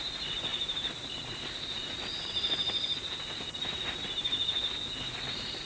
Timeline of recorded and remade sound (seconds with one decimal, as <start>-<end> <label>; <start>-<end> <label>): 0.0-5.7 recorded